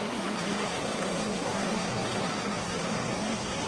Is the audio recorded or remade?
remade